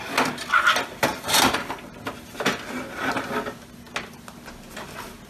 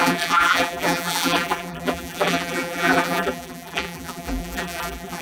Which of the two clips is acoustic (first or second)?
first